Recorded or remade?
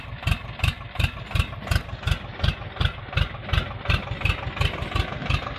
recorded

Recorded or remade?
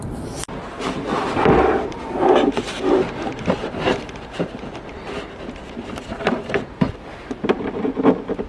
remade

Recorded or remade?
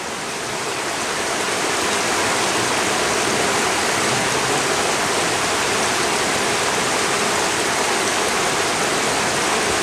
recorded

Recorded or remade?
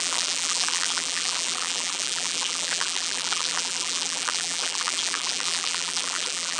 remade